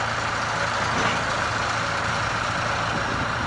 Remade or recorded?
recorded